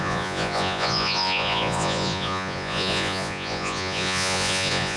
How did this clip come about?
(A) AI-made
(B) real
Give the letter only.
A